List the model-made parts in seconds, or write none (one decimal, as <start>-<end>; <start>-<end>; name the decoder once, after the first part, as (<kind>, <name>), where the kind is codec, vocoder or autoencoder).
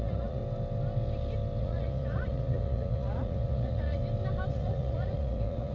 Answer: 0.0-0.4 (vocoder, Vocos); 1.6-4.0; 4.5-5.7